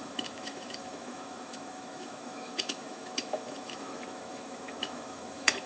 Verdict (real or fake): fake